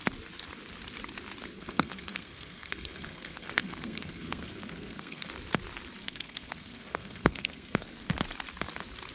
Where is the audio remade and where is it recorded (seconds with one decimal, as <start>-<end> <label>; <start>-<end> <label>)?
0.0-1.5 recorded; 1.5-5.3 remade; 5.3-6.0 recorded; 6.0-8.1 remade; 8.1-9.1 recorded